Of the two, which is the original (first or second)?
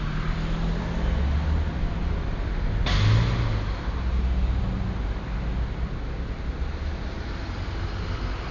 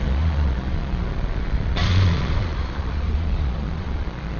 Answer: first